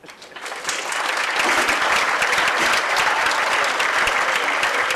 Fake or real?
real